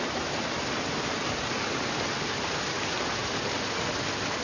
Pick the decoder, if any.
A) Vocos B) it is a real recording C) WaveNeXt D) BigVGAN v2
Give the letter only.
B